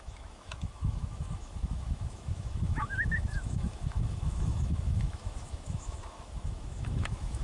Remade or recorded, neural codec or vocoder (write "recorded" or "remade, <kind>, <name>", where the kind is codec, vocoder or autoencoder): remade, autoencoder, DAC-VAE